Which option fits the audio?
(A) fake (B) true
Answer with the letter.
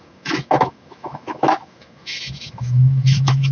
A